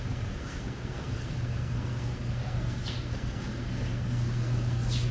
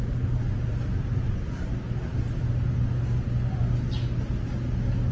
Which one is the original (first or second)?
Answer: second